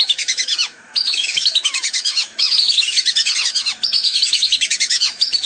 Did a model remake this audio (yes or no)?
yes